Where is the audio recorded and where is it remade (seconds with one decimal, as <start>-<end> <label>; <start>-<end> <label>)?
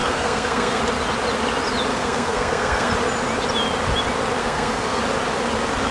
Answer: 0.0-0.8 remade; 0.8-1.9 recorded; 1.9-2.9 remade; 2.9-4.4 recorded; 4.4-5.0 remade; 5.0-5.9 recorded